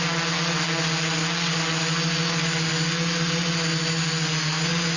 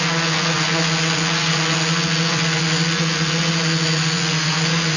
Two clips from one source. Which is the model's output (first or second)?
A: second